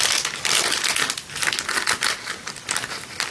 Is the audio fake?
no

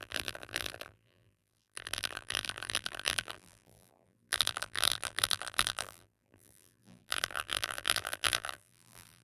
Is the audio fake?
yes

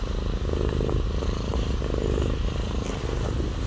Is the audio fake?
no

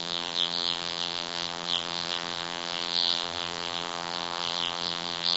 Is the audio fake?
yes